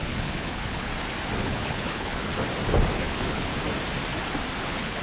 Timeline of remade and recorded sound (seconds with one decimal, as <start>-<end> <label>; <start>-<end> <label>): 0.0-0.9 remade; 0.9-1.4 recorded; 1.4-2.3 remade; 2.3-2.9 recorded; 2.9-3.5 remade; 3.5-4.6 recorded; 4.6-5.0 remade